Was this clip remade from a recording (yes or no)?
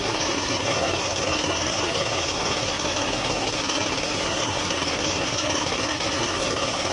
yes